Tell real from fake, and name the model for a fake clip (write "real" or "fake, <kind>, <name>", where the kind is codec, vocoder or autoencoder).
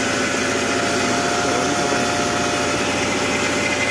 real